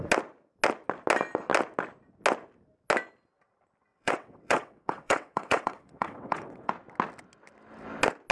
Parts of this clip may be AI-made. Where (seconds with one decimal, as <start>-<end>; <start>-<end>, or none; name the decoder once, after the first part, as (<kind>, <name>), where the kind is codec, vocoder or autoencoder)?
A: 3.9-6.7 (vocoder, WaveNeXt)